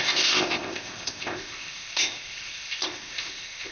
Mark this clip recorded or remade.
remade